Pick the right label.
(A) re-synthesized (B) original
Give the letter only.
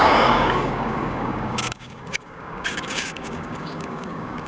A